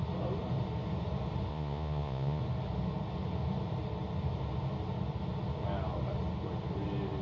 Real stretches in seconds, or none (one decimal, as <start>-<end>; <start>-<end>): 0.0-1.5; 2.4-7.2